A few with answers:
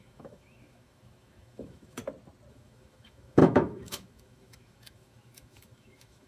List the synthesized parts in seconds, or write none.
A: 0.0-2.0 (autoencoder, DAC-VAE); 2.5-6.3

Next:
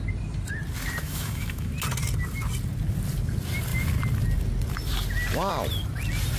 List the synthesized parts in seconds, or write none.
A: 1.0-1.7 (autoencoder, DAC-VAE)

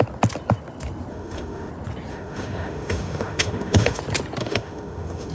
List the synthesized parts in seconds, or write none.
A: 1.1-1.7 (autoencoder, DAC-VAE); 2.1-4.0; 4.4-5.3

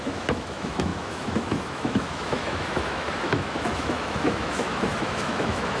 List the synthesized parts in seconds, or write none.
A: 0.0-5.8 (autoencoder, DAC-VAE)

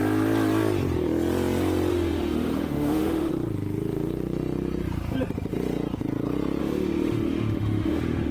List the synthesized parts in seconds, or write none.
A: 1.9-3.3 (autoencoder, DAC-VAE); 6.6-8.3

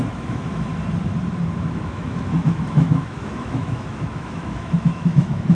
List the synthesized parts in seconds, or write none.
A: 0.0-0.7 (autoencoder, DAC-VAE); 1.6-5.5